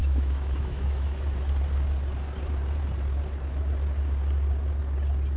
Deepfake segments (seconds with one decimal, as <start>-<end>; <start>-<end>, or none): 0.0-1.2